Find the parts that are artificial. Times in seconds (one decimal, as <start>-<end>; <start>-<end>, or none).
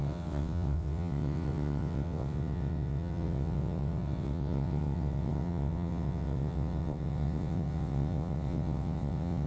0.0-9.5